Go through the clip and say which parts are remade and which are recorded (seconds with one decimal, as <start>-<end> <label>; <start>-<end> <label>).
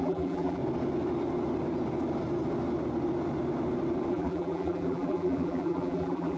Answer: 0.0-0.6 remade; 0.6-4.1 recorded; 4.1-6.4 remade